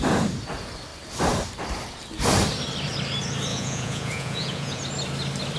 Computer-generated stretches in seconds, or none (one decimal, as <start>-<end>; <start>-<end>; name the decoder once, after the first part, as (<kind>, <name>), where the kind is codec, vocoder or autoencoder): 3.5-4.8 (vocoder, Vocos)

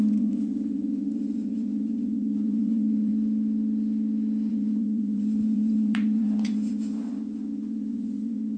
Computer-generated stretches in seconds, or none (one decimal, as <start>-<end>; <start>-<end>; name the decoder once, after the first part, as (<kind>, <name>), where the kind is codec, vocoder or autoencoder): 0.0-3.1 (vocoder, Vocos); 4.5-8.6

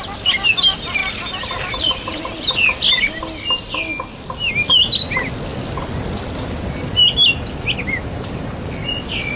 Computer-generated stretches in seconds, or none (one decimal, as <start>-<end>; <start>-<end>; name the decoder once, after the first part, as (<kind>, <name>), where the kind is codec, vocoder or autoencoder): none